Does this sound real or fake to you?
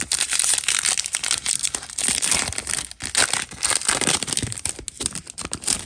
real